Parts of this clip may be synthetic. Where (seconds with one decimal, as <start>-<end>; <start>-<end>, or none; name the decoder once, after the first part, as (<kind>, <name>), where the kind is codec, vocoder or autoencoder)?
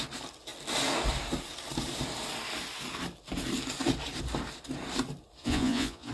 5.4-6.1 (vocoder, Vocos)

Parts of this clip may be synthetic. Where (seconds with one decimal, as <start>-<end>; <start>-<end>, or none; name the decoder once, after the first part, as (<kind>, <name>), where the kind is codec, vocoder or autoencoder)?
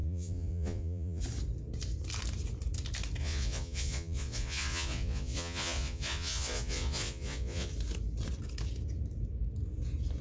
0.0-1.2 (vocoder, Vocos); 3.2-7.7